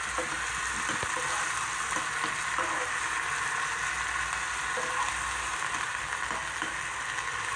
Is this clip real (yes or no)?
yes